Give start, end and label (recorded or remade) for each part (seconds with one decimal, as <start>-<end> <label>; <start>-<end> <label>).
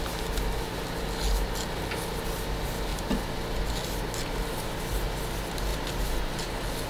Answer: 0.0-5.7 recorded; 5.7-6.5 remade; 6.5-6.9 recorded